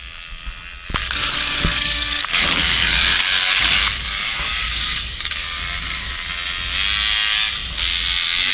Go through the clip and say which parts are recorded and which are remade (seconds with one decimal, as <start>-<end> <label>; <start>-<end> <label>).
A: 0.0-1.0 recorded; 1.0-6.1 remade; 6.1-8.5 recorded